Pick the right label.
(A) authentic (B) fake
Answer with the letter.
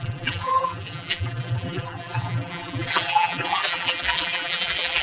B